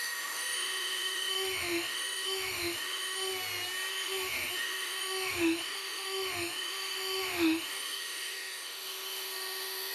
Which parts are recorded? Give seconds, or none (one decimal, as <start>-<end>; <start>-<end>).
3.3-3.9